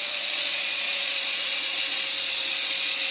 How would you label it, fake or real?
fake